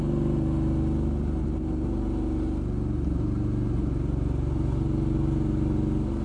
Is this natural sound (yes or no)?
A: yes